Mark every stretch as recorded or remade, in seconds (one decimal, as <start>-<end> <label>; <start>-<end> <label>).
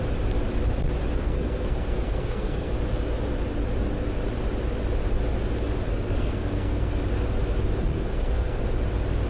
0.0-1.2 recorded; 1.2-2.7 remade; 2.7-5.9 recorded; 5.9-7.0 remade; 7.0-7.9 recorded; 7.9-8.6 remade; 8.6-9.3 recorded